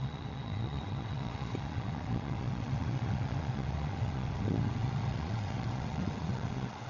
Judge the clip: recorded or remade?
remade